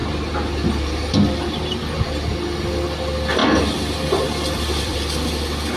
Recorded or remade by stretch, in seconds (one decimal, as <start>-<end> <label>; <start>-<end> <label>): 0.0-3.4 recorded; 3.4-5.0 remade; 5.0-5.8 recorded

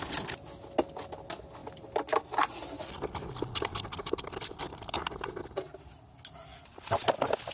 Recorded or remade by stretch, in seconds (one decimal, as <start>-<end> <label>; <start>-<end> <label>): 0.0-1.6 recorded; 1.6-5.3 remade; 5.3-7.5 recorded

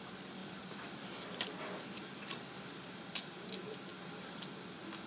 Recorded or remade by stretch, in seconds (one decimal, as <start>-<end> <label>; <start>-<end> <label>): 0.0-0.4 recorded; 0.4-3.5 remade; 3.5-5.1 recorded

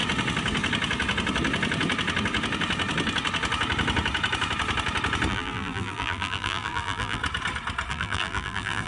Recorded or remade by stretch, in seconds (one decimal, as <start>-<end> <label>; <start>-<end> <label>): 0.0-5.3 recorded; 5.3-7.2 remade; 7.2-7.9 recorded; 7.9-8.9 remade

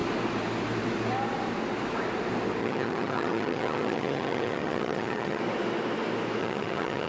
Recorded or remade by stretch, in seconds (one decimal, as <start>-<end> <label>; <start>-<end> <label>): 0.0-2.6 recorded; 2.6-5.4 remade; 5.4-6.4 recorded; 6.4-7.1 remade

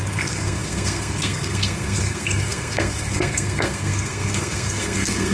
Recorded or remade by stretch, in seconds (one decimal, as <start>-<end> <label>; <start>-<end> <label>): 0.0-5.3 remade

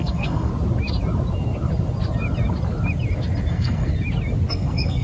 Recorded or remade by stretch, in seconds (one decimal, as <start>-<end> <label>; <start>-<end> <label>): 0.0-0.5 remade; 0.5-3.5 recorded; 3.5-3.9 remade; 3.9-4.5 recorded; 4.5-5.0 remade

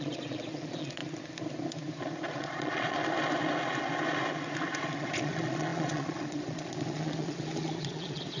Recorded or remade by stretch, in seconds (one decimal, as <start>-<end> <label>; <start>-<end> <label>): 0.0-1.0 remade; 1.0-2.3 recorded; 2.3-3.0 remade; 3.0-5.0 recorded; 5.0-8.4 remade